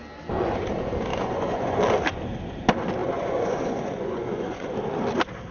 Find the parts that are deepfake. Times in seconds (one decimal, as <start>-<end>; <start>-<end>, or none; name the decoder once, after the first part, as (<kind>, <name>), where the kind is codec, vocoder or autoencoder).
1.1-1.8 (vocoder, Vocos); 3.0-4.7